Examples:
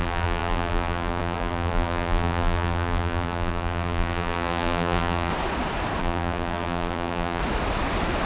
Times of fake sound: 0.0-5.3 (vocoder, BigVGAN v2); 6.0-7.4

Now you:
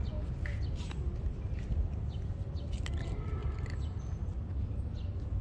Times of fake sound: none

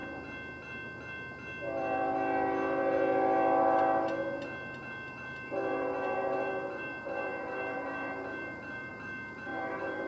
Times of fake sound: 5.1-10.1 (vocoder, BigVGAN v2)

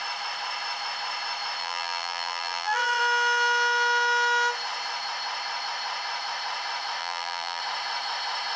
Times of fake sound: 1.6-3.0 (vocoder, BigVGAN v2); 7.0-7.6

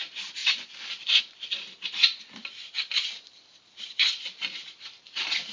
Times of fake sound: 0.0-0.4 (vocoder, BigVGAN v2); 1.2-5.5

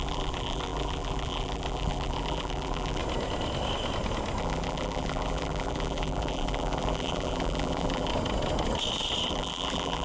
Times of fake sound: 0.0-3.0 (vocoder, BigVGAN v2); 4.4-8.1; 9.3-10.0